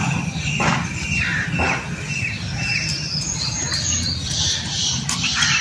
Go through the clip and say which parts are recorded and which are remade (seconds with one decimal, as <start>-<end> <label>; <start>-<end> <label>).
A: 0.0-5.6 recorded